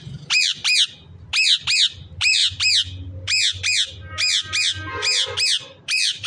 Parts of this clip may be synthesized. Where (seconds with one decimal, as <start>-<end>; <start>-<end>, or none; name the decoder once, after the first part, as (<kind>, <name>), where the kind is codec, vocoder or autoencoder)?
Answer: 0.0-0.6 (vocoder, BigVGAN v2); 1.9-2.4; 5.8-6.3